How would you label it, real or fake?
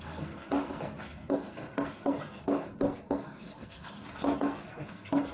fake